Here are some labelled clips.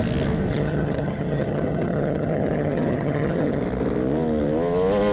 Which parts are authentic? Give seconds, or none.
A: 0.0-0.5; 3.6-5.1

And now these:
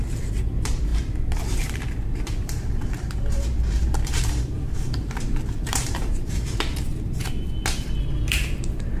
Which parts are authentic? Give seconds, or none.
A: 6.9-8.3

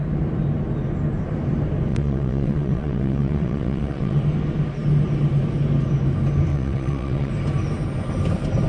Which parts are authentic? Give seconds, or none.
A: 0.0-1.9; 4.2-6.5; 7.3-8.7

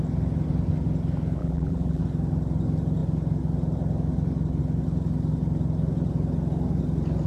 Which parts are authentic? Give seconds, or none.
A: 0.0-1.4; 2.0-7.3